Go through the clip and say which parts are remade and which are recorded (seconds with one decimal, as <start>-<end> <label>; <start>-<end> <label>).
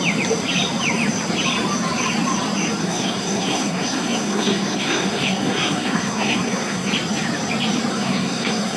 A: 0.0-2.8 recorded; 2.8-6.9 remade; 6.9-7.9 recorded; 7.9-8.8 remade